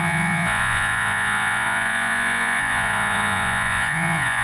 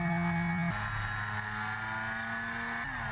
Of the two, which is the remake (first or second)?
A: first